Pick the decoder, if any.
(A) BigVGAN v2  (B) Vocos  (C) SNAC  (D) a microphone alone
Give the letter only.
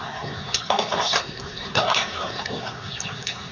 C